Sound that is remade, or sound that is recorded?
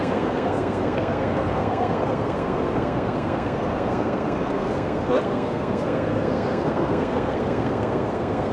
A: remade